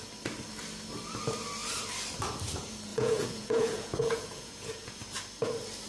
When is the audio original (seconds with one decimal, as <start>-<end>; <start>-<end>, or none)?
0.0-2.9; 5.0-5.9